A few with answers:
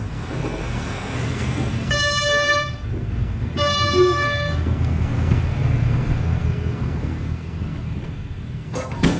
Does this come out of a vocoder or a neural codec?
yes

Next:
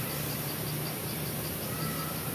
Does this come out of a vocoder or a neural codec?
no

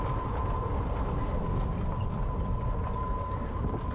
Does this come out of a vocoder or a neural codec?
no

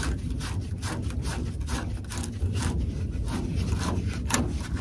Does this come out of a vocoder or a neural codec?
no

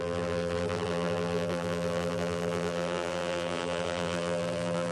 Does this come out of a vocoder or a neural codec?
yes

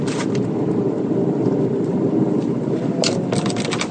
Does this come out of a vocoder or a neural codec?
no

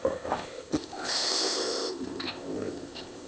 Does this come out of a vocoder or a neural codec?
yes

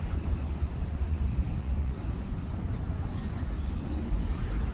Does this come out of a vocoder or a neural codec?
yes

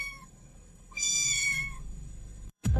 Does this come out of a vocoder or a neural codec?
yes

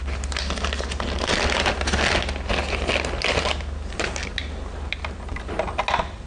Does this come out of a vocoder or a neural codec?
no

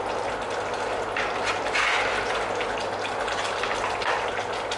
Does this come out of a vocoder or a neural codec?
no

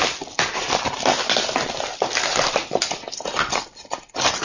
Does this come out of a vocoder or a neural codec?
no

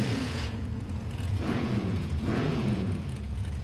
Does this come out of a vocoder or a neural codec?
yes